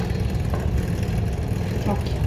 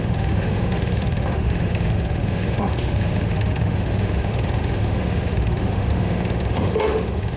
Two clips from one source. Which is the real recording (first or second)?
first